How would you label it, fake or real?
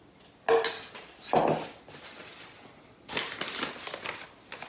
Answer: real